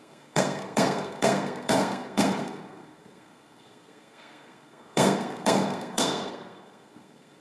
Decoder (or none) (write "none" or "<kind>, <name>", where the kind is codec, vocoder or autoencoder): codec, SNAC